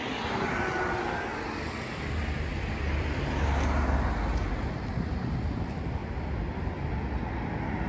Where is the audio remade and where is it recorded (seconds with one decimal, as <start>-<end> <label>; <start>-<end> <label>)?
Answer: 0.0-7.9 recorded